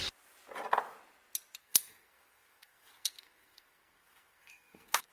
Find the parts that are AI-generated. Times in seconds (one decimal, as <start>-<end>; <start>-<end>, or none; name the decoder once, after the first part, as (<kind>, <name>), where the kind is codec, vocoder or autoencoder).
1.6-5.1 (codec, SNAC)